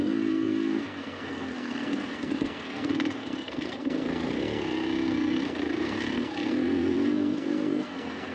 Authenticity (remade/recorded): remade